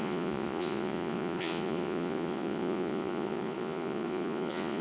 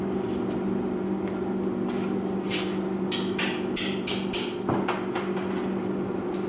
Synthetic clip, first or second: first